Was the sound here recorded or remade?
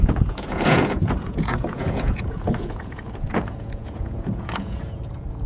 remade